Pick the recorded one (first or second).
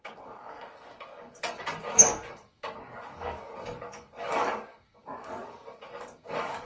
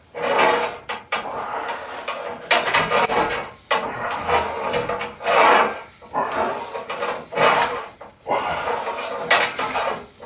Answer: second